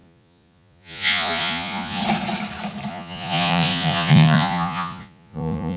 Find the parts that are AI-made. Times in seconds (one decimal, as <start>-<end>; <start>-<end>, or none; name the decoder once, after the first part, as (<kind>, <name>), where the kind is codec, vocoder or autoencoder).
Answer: 0.0-2.0 (vocoder, Vocos); 2.9-5.8